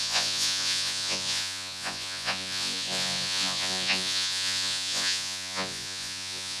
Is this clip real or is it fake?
fake